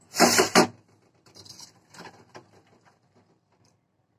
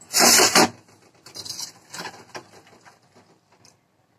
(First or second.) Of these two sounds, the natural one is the second